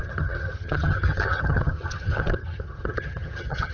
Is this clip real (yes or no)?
no